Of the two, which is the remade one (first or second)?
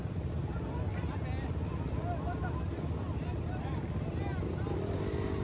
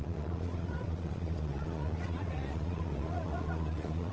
second